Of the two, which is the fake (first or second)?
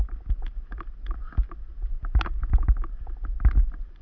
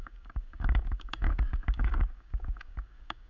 second